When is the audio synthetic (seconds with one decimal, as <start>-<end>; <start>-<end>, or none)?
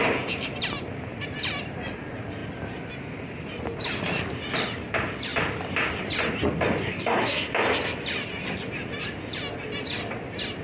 6.8-7.5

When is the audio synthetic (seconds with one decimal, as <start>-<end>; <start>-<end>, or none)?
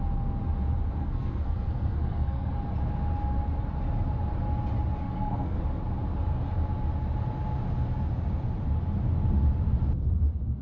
1.0-2.5; 5.0-5.6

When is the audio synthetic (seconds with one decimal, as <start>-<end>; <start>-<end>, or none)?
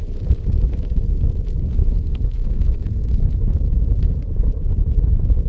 1.8-3.3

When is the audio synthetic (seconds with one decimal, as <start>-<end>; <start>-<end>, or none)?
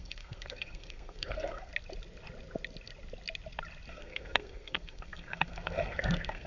0.0-1.7; 3.9-6.5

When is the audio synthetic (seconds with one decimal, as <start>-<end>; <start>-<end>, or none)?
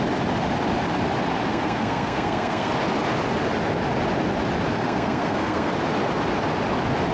1.5-2.7; 4.8-5.7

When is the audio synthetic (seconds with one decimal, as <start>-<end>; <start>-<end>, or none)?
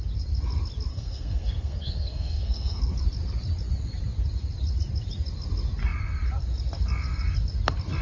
0.9-2.8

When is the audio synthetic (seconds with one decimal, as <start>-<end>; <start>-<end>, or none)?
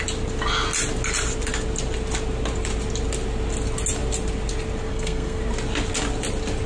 4.9-5.4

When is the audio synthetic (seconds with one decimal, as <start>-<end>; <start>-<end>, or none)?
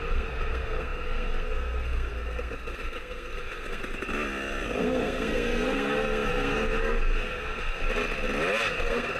0.0-3.8; 4.8-7.8; 8.7-9.2